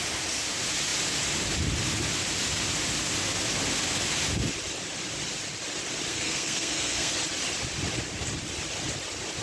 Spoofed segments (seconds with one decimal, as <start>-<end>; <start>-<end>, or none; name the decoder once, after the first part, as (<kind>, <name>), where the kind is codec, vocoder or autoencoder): 6.1-7.1 (codec, SNAC)